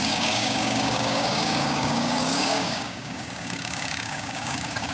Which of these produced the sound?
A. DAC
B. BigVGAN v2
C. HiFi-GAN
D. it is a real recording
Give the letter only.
A